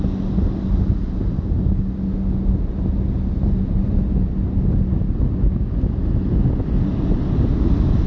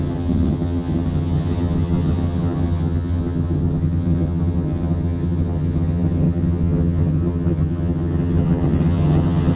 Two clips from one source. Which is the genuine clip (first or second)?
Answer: first